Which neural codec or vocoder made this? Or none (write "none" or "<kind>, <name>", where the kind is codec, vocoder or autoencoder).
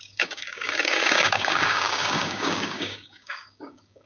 codec, DAC